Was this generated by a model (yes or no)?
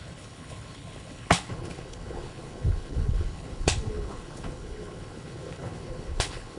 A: yes